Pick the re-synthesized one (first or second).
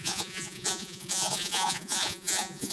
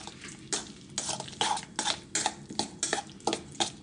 first